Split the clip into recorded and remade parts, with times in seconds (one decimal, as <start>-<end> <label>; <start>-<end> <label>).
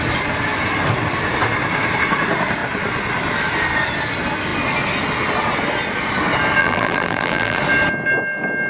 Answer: 0.0-6.6 recorded; 6.6-7.6 remade; 7.6-8.7 recorded